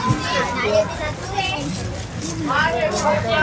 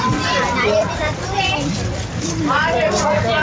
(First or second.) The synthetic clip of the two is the second